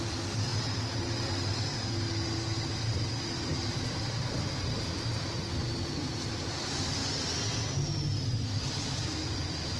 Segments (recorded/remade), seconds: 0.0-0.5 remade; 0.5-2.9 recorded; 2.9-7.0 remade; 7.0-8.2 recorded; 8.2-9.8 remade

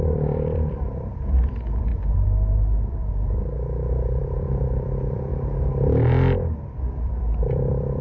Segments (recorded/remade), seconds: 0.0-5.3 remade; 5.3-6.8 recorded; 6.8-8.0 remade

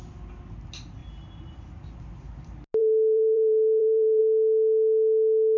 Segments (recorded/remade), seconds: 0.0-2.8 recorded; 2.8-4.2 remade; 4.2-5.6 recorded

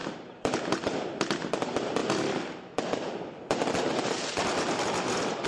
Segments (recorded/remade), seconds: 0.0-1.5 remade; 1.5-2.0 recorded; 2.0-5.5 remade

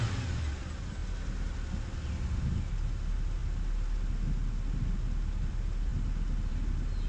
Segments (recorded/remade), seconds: 0.0-7.1 recorded

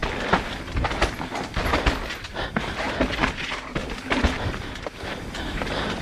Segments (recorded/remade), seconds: 0.0-2.4 recorded; 2.4-3.8 remade; 3.8-4.9 recorded; 4.9-6.0 remade

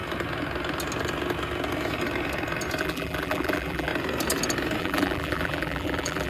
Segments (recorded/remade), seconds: 0.0-2.8 recorded; 2.8-3.9 remade; 3.9-4.8 recorded; 4.8-6.3 remade